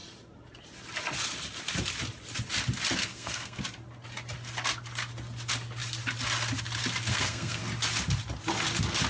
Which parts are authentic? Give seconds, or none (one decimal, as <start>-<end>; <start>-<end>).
0.0-3.0; 3.6-7.1; 7.6-9.1